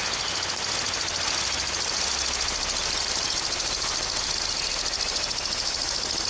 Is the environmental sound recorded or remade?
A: recorded